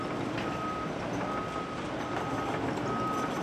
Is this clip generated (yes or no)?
no